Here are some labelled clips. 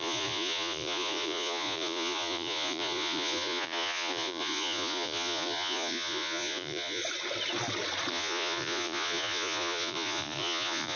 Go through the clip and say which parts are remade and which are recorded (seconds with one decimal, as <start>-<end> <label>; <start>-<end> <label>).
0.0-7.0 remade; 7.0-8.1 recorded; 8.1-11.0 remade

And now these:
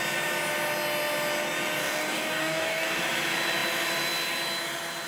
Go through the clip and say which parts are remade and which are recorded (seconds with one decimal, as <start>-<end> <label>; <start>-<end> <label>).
0.0-1.8 recorded; 1.8-3.0 remade; 3.0-5.1 recorded

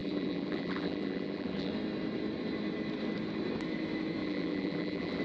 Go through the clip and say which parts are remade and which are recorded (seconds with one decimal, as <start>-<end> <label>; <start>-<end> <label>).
0.0-1.7 remade; 1.7-4.2 recorded; 4.2-5.2 remade